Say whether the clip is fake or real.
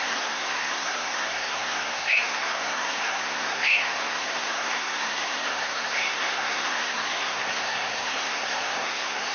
fake